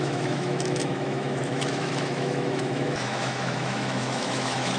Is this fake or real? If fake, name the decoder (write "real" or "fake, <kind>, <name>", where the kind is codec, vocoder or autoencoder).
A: fake, autoencoder, DAC-VAE